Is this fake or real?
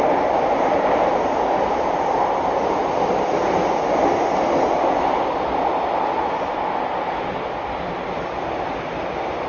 real